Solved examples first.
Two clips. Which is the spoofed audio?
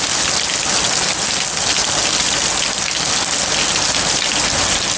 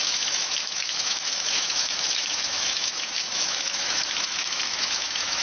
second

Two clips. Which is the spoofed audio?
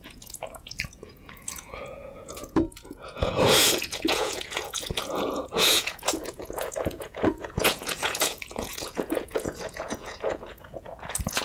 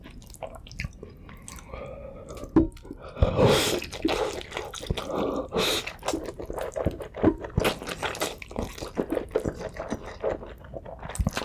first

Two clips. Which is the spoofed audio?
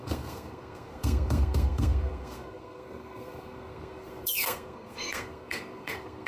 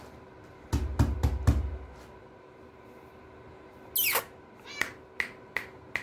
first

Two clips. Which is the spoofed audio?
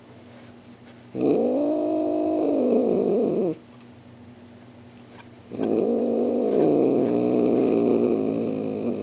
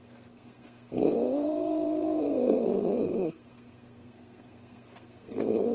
second